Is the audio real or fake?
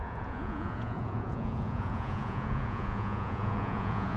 fake